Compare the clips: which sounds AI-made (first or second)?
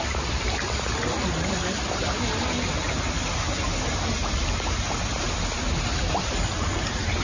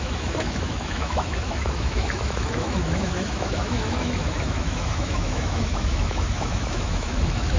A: second